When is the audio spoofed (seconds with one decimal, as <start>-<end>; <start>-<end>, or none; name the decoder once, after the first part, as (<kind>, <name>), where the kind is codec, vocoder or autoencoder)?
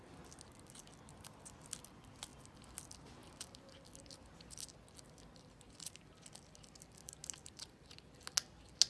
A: none